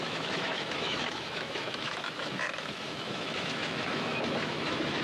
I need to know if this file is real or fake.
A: fake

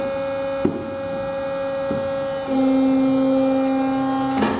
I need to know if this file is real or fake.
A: real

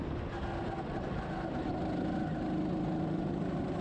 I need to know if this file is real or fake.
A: real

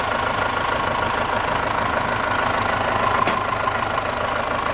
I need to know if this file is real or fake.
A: real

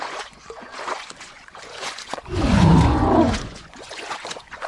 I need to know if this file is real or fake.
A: fake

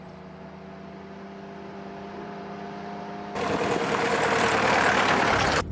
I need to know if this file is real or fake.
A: real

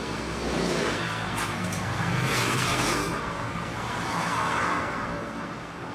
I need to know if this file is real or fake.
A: fake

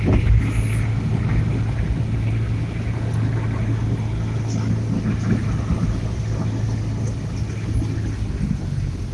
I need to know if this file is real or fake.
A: real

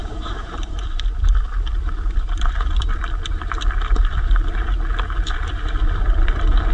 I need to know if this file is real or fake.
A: fake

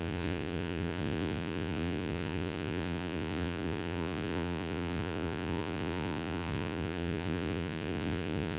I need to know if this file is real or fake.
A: fake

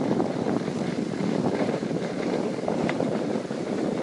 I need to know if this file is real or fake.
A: fake